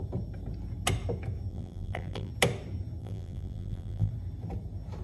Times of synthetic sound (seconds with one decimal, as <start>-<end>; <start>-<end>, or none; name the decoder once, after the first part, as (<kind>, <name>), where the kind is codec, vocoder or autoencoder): 1.5-2.3 (vocoder, BigVGAN v2); 3.0-4.1